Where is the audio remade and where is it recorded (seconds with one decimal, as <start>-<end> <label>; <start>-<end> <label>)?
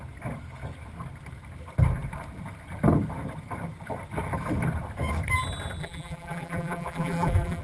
0.0-5.8 recorded; 5.8-7.6 remade